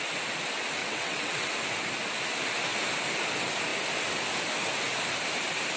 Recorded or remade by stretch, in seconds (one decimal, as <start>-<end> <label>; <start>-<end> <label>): 0.0-0.8 recorded; 0.8-1.5 remade; 1.5-5.8 recorded